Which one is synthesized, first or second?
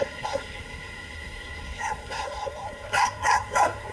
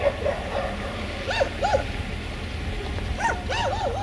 first